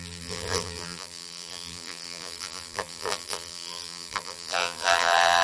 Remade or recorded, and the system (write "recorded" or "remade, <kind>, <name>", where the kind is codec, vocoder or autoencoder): remade, vocoder, BigVGAN v2